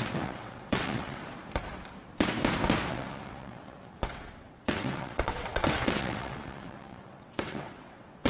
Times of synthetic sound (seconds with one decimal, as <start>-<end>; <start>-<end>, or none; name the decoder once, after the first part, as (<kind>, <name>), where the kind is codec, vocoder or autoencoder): 0.0-1.2 (vocoder, WaveNeXt); 2.9-8.3